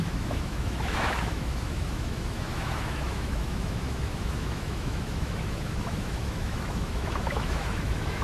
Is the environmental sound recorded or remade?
remade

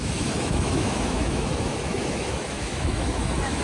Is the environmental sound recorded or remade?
remade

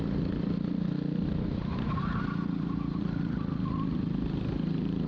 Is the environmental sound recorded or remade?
recorded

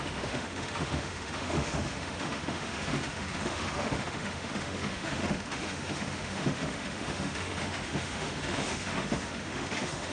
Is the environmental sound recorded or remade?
remade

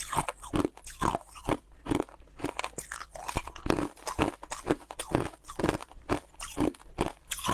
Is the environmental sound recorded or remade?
recorded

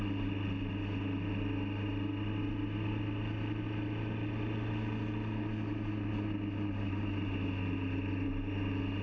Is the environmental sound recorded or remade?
recorded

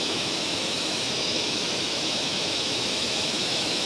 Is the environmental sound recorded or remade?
remade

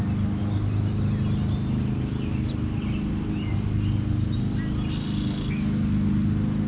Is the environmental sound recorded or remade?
recorded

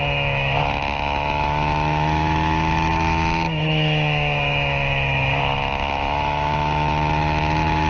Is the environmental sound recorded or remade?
remade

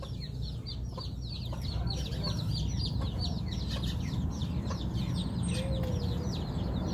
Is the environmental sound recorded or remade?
recorded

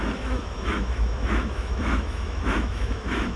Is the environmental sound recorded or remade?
remade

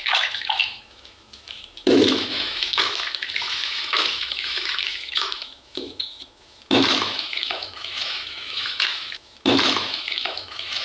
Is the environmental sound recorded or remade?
remade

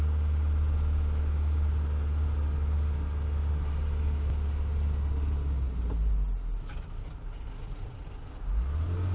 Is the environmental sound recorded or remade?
recorded